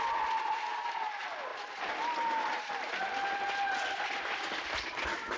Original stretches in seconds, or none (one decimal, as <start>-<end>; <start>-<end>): 0.0-5.4